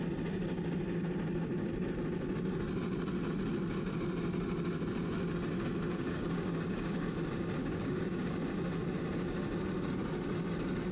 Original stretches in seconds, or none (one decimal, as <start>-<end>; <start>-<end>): 0.0-5.9; 7.1-7.6; 8.3-10.9